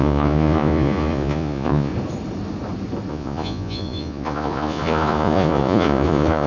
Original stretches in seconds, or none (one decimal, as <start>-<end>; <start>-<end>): 1.9-3.1